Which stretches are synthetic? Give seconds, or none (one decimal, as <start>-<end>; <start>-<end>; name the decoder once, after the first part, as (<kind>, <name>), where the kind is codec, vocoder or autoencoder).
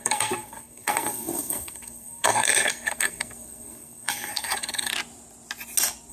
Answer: 0.0-4.9 (codec, SNAC)